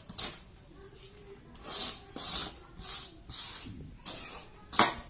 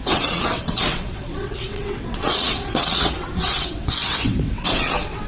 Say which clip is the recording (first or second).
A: first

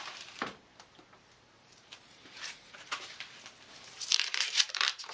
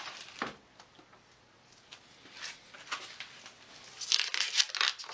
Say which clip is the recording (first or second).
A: second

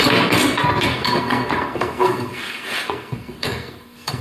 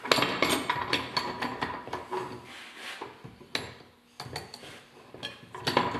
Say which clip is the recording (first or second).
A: second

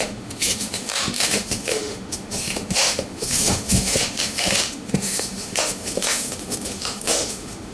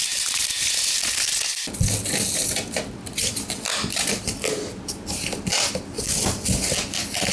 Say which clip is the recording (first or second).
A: second